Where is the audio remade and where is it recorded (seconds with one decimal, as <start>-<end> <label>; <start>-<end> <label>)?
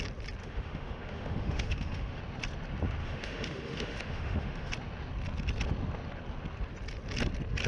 0.0-0.4 recorded; 0.4-2.2 remade; 2.2-3.0 recorded; 3.0-4.7 remade; 4.7-7.7 recorded